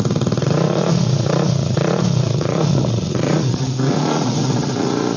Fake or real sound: fake